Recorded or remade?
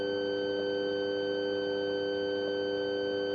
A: recorded